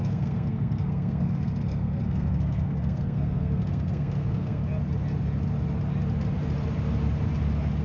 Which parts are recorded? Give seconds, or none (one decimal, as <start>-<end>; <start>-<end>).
4.6-7.8